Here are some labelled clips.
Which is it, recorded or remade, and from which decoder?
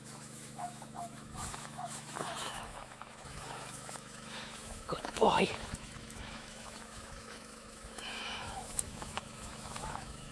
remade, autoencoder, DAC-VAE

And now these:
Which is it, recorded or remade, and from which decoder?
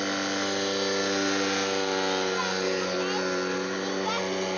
recorded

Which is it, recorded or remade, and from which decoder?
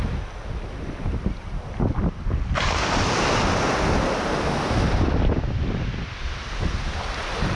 recorded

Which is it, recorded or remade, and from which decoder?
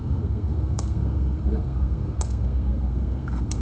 remade, codec, SNAC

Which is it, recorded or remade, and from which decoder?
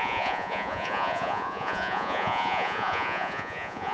remade, vocoder, Vocos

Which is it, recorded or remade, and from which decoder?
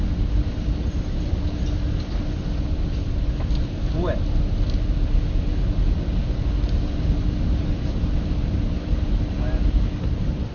recorded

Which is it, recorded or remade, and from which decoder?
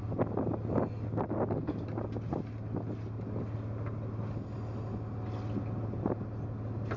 recorded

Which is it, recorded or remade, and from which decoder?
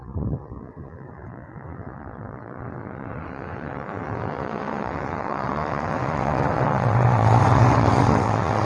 remade, vocoder, WaveNeXt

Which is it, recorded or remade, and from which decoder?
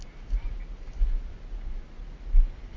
recorded